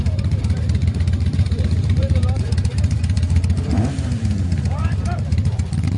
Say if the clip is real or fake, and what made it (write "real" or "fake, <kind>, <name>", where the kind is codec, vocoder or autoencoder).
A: fake, vocoder, BigVGAN v2